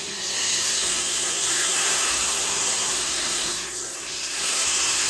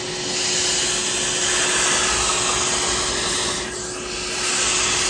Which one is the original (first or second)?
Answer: second